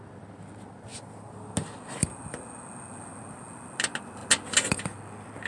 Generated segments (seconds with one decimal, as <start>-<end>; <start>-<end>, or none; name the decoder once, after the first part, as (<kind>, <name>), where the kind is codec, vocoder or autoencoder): none